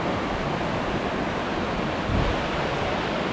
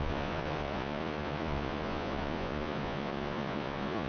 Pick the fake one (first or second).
second